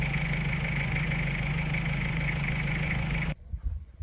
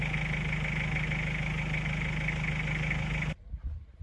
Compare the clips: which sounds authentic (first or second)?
second